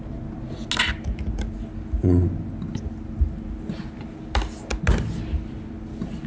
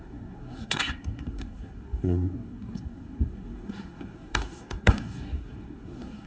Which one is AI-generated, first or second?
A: second